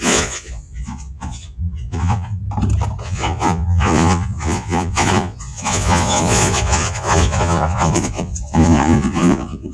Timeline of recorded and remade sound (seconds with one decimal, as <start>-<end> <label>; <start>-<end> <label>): 0.0-2.4 remade; 2.4-3.0 recorded; 3.0-9.7 remade